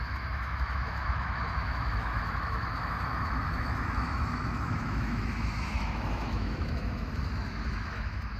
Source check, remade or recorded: remade